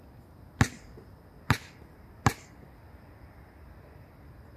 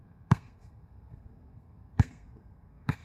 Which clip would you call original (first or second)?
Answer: first